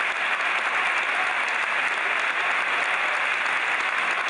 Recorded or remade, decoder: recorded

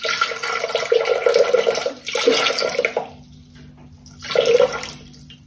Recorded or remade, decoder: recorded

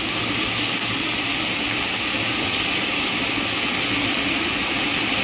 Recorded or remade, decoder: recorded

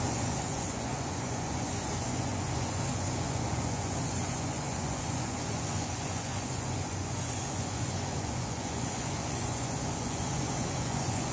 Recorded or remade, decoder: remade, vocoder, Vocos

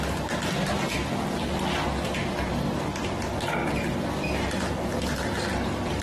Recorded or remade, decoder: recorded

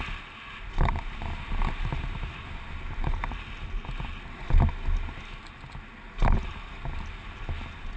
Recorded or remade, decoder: recorded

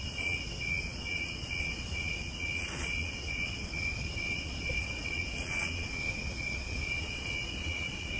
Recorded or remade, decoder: remade, vocoder, Vocos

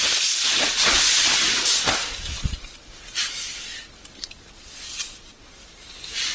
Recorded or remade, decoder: recorded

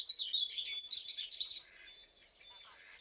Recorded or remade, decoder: recorded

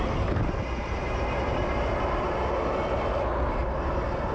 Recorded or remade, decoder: recorded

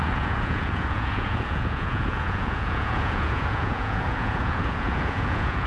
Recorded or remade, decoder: remade, vocoder, Vocos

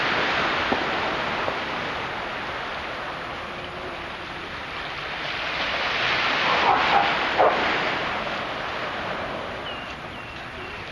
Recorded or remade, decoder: recorded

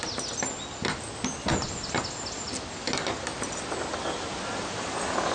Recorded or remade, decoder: recorded